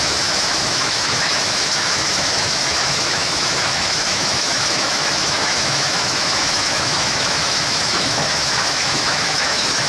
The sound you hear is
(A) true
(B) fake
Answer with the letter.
B